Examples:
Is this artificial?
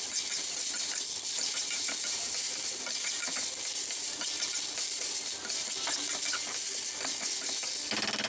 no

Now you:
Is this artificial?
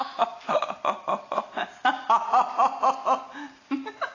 no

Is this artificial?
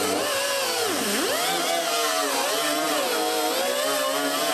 no